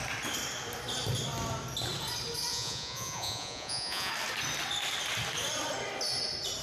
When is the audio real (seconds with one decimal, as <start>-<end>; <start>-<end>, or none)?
0.0-2.5; 4.1-6.6